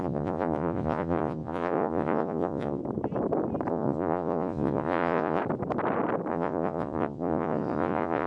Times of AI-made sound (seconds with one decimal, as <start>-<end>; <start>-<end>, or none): 0.0-2.8; 3.7-5.4; 6.3-8.3